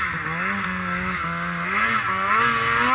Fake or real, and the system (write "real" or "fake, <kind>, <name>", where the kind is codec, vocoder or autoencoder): real